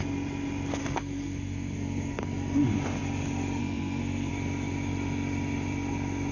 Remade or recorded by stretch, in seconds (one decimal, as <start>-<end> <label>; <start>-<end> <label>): 0.0-0.8 recorded; 0.8-2.2 remade; 2.2-3.6 recorded; 3.6-4.3 remade; 4.3-6.3 recorded